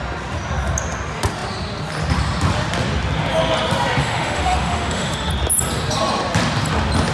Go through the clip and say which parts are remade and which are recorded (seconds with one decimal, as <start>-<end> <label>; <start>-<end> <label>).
0.0-4.0 recorded; 4.0-5.3 remade; 5.3-7.1 recorded